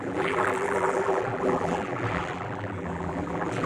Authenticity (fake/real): fake